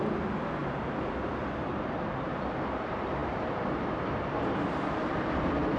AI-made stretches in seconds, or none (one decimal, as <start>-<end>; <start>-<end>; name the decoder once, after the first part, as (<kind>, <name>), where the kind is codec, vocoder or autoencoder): none